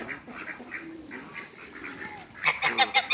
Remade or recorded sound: recorded